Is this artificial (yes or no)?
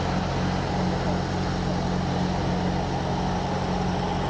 no